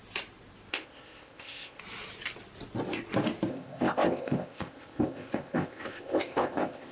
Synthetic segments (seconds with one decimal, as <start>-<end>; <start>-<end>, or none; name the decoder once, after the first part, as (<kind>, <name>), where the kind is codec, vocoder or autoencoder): 0.7-1.8 (codec, ZipCodec); 3.5-6.9